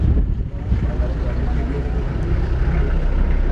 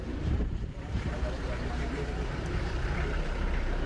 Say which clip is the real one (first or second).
first